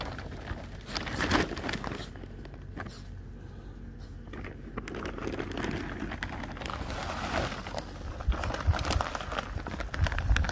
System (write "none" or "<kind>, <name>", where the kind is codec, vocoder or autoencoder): none